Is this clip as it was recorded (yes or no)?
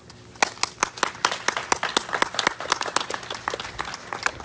yes